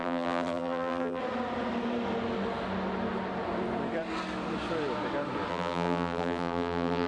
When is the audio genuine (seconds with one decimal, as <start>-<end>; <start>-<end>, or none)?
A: 1.2-5.5